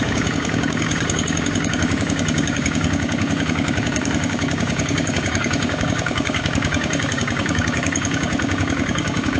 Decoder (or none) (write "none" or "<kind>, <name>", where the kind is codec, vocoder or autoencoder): codec, DAC